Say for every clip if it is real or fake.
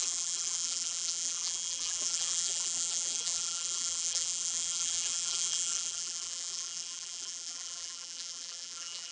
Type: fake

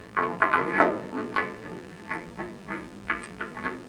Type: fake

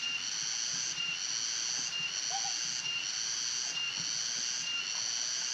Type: real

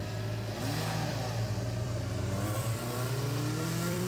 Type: fake